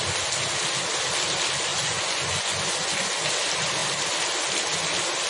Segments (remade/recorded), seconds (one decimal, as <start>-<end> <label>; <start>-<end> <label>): 0.0-1.7 recorded; 1.7-3.1 remade; 3.1-5.3 recorded